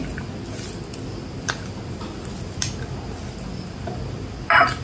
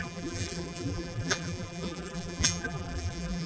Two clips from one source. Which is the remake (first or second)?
second